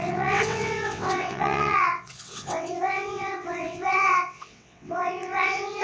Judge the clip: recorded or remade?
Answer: remade